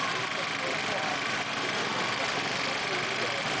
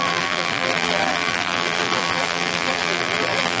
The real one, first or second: first